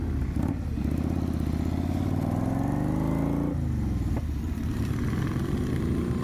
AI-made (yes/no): no